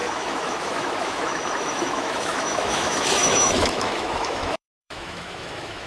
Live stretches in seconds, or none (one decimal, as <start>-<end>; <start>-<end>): none